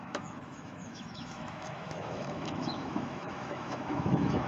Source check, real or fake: fake